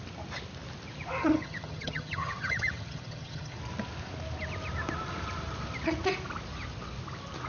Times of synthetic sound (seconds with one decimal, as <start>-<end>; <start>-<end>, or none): 1.2-3.6